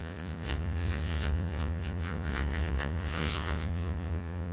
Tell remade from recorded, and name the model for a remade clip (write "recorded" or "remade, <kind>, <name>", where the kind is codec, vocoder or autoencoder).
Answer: remade, vocoder, Vocos